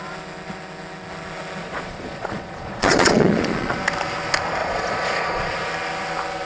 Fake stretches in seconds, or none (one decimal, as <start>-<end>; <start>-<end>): 1.6-3.8; 4.6-5.7